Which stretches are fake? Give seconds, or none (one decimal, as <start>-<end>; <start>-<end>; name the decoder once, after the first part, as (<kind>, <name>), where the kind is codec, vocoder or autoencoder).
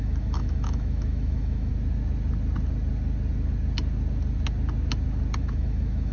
0.0-1.7 (autoencoder, DAC-VAE); 5.4-6.1